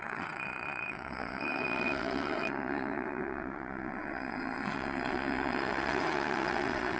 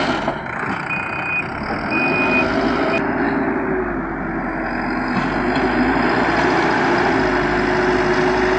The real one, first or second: second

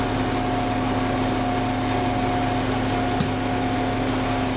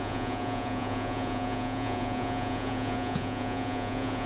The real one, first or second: first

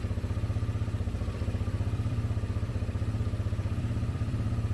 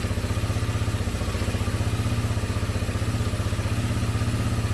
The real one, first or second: second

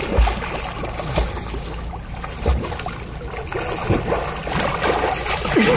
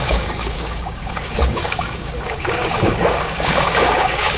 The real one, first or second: first